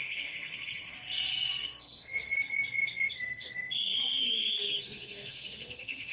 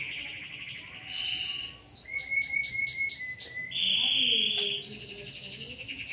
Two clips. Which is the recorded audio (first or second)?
second